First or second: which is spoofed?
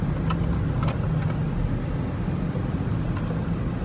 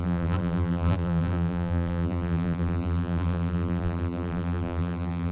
second